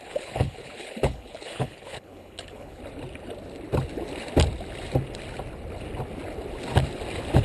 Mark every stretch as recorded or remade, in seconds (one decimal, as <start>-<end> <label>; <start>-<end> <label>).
0.0-2.8 remade; 2.8-7.4 recorded